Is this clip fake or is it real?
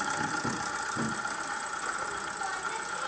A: real